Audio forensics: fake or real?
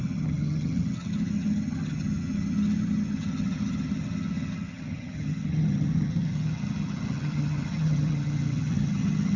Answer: fake